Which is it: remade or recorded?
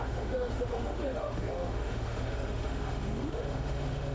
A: remade